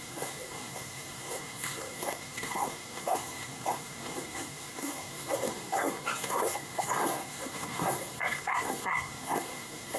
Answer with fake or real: fake